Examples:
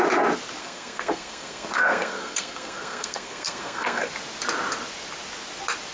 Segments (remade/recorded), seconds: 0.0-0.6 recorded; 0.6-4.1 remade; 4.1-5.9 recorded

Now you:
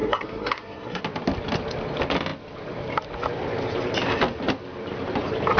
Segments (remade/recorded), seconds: 0.0-1.0 remade; 1.0-5.6 recorded